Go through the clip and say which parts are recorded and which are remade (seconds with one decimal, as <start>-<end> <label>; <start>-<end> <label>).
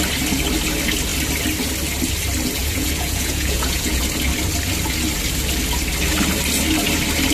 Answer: 0.0-2.6 recorded; 2.6-4.0 remade; 4.0-7.3 recorded